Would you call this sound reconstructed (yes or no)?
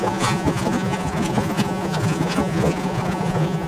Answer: yes